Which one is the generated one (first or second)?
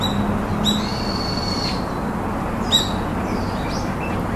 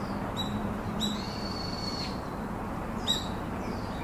second